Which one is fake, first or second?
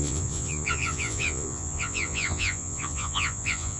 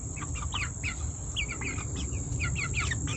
first